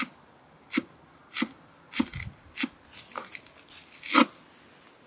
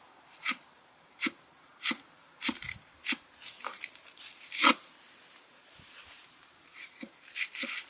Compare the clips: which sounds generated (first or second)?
second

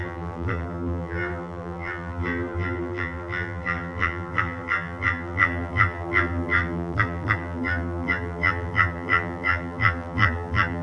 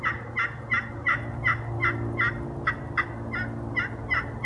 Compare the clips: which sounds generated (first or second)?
first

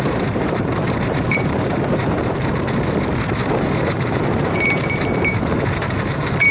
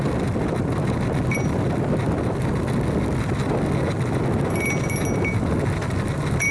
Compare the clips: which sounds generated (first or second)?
first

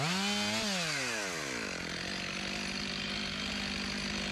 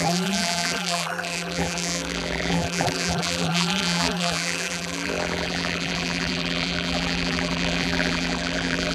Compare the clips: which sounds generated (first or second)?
second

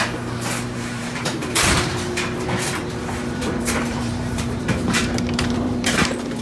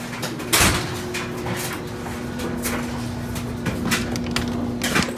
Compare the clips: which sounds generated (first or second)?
first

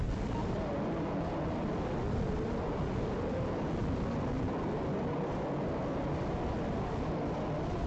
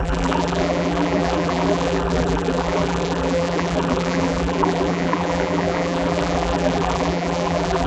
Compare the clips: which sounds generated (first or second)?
second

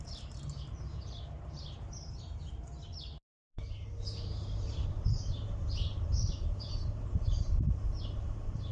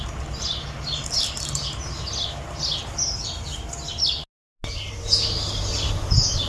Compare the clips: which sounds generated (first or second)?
first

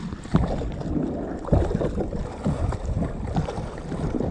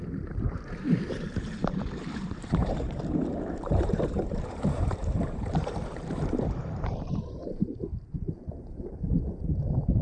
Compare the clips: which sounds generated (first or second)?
second